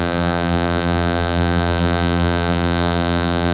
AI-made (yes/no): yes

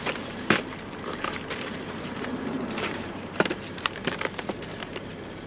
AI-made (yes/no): yes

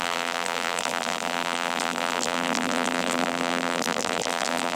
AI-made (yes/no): yes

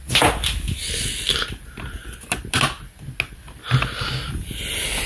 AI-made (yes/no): no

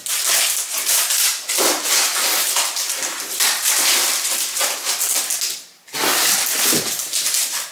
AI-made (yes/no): yes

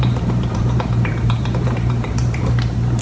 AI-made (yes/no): yes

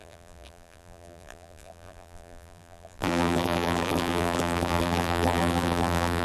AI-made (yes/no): yes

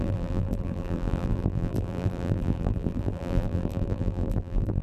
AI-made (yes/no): yes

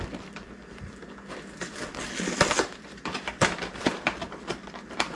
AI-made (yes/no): yes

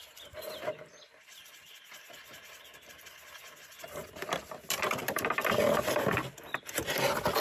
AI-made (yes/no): no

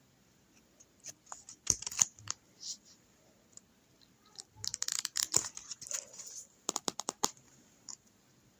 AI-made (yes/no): yes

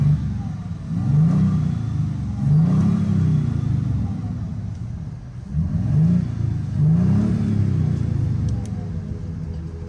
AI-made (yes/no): no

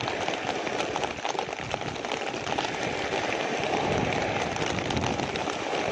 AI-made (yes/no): no